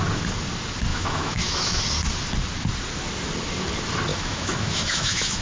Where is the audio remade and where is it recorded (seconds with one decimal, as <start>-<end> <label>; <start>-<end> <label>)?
0.0-0.9 recorded; 0.9-1.8 remade; 1.8-4.1 recorded; 4.1-5.4 remade